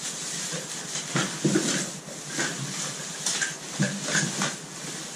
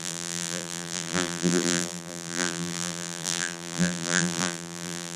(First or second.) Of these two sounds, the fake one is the second